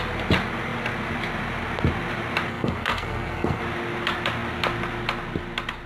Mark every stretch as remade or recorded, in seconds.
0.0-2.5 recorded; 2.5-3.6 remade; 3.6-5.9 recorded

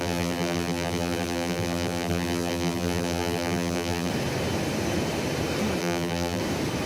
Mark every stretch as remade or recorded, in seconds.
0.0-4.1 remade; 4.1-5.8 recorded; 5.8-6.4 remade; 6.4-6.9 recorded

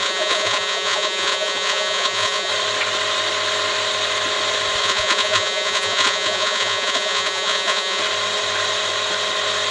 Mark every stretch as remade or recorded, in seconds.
0.0-2.5 remade; 2.5-4.8 recorded; 4.8-8.0 remade; 8.0-9.7 recorded